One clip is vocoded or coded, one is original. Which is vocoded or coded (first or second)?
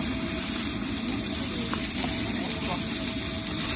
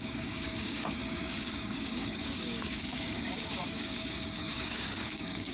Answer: second